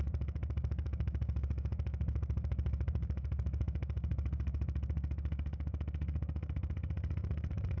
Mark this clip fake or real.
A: fake